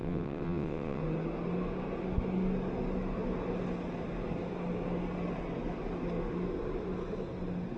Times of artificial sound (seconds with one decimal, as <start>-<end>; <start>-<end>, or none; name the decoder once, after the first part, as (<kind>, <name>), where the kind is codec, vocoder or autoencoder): 0.0-1.0 (vocoder, WaveNeXt)